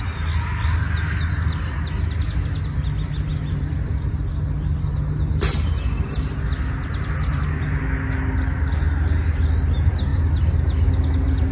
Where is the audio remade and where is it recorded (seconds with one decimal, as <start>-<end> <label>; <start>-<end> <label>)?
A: 0.0-3.3 recorded; 3.3-4.9 remade; 4.9-11.5 recorded